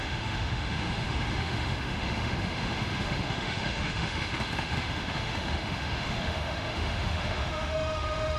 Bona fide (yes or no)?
no